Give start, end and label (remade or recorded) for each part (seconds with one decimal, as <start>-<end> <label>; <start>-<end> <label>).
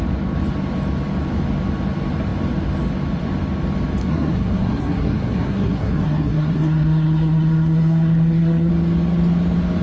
0.0-4.0 recorded; 4.0-8.7 remade; 8.7-9.8 recorded